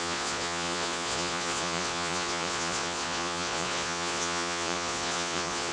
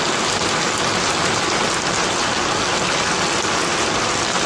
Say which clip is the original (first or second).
second